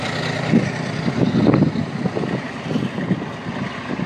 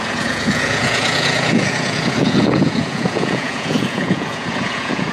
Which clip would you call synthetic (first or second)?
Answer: second